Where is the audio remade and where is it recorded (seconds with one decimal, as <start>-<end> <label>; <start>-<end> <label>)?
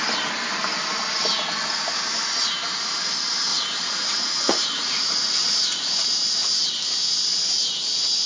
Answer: 0.0-3.5 recorded; 3.5-5.9 remade; 5.9-8.3 recorded